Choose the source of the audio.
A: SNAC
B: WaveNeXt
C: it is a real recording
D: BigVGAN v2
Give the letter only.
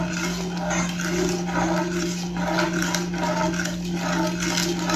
C